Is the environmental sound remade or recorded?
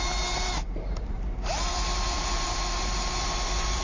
remade